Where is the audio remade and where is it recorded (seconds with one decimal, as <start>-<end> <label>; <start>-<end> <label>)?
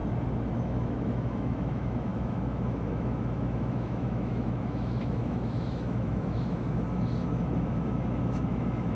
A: 0.0-0.6 recorded; 0.6-8.9 remade